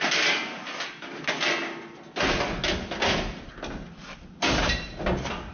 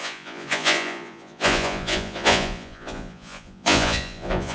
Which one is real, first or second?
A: first